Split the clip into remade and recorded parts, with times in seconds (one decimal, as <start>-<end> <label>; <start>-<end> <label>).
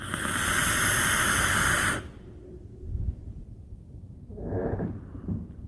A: 0.0-0.6 recorded; 0.6-4.0 remade; 4.0-5.7 recorded